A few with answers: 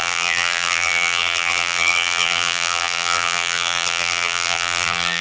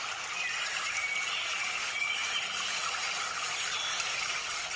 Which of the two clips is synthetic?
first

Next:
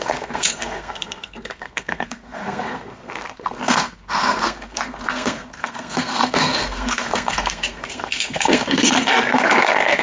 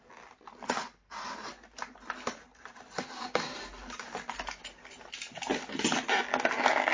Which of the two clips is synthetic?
first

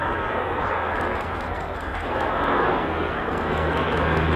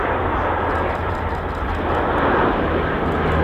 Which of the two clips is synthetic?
first